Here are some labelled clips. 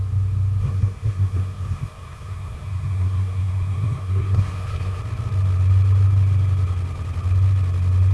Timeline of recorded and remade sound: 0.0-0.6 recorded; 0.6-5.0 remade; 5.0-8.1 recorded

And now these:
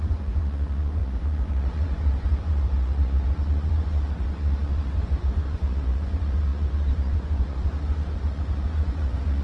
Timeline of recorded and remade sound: 0.0-9.4 remade

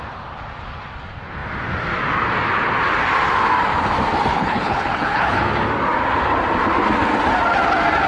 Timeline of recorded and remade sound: 0.0-4.3 recorded; 4.3-5.4 remade; 5.4-8.1 recorded

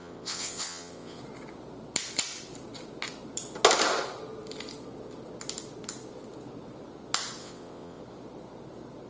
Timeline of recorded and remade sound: 0.0-1.2 remade; 1.2-7.4 recorded; 7.4-8.0 remade; 8.0-9.1 recorded

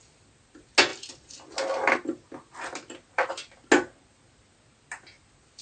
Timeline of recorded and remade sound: 0.0-5.6 recorded